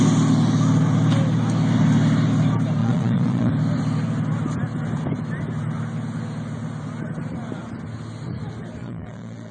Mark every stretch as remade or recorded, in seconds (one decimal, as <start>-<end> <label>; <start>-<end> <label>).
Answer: 0.0-2.8 recorded; 2.8-3.5 remade; 3.5-8.8 recorded; 8.8-9.5 remade